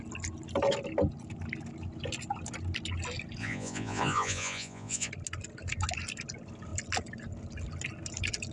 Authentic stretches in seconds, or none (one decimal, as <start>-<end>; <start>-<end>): 0.0-3.4; 5.1-8.5